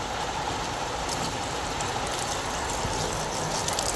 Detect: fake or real real